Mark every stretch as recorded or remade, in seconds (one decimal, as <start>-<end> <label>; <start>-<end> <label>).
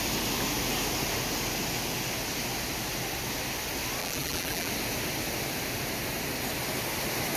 0.0-4.0 recorded; 4.0-4.7 remade; 4.7-7.4 recorded